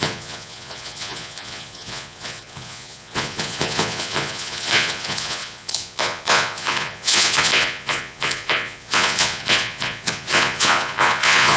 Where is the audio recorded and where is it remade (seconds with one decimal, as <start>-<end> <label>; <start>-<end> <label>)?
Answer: 0.0-11.6 remade